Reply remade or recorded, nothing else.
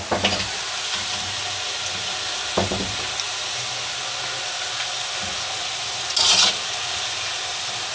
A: recorded